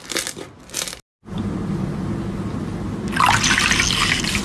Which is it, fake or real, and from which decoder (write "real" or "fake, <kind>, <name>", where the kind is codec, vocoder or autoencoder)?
real